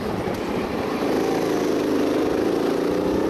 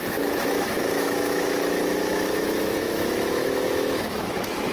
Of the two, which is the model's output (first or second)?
second